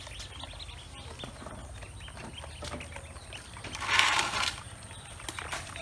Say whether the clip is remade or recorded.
recorded